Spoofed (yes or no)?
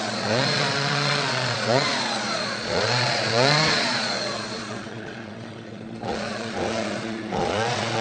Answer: yes